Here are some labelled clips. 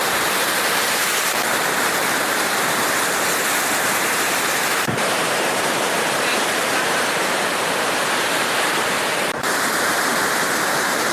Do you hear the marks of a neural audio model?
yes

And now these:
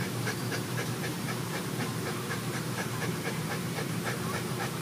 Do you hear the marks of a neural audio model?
yes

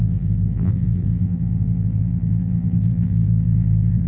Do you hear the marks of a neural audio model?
yes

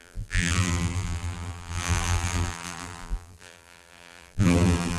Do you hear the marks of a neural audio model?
yes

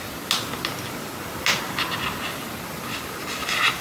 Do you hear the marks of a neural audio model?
no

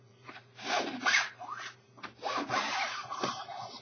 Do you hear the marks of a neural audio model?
yes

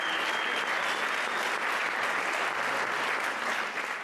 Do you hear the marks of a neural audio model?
no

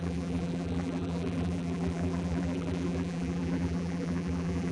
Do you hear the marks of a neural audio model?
yes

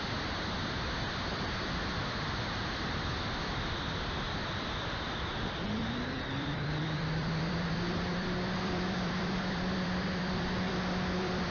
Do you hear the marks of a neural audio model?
yes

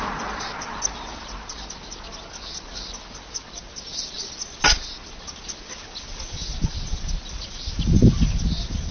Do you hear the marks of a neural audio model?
no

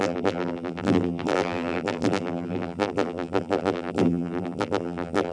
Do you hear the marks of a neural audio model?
yes